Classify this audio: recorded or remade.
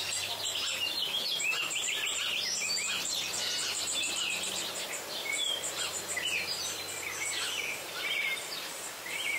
remade